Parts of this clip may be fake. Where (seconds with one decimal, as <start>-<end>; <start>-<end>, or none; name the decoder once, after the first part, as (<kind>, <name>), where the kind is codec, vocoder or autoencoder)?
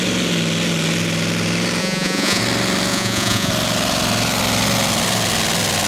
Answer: 1.8-2.4 (vocoder, Vocos); 2.9-3.5